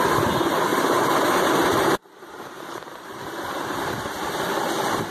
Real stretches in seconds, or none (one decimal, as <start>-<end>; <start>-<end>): 0.0-0.7; 3.6-5.1